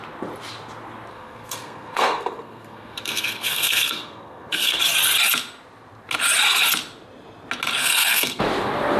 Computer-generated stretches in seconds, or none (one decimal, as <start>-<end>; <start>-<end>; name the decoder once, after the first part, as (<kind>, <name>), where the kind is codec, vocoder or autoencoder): 1.1-4.8 (codec, SNAC); 7.8-8.4